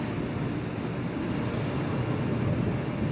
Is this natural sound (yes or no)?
yes